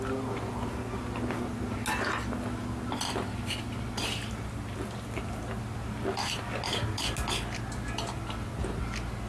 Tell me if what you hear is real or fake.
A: real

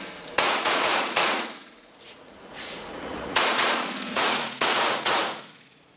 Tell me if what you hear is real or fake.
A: fake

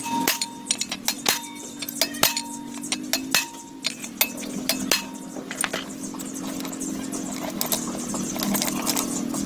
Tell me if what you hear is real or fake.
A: real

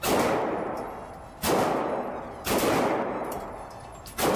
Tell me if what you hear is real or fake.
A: real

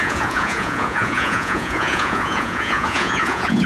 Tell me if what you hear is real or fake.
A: fake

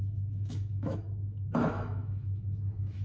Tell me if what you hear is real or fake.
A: fake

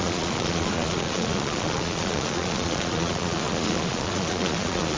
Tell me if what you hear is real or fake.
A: fake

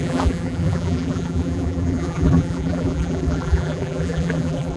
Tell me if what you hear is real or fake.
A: fake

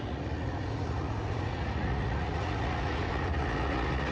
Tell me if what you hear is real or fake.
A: fake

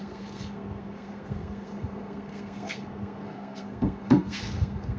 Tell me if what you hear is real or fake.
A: fake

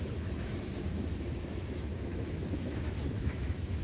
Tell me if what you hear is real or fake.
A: fake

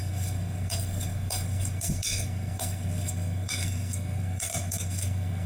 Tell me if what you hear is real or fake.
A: fake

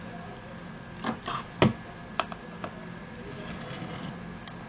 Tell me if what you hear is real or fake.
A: real